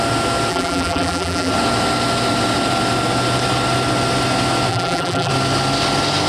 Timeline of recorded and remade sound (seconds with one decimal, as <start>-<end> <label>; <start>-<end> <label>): 0.0-0.5 recorded; 0.5-1.5 remade; 1.5-4.7 recorded; 4.7-5.3 remade; 5.3-6.3 recorded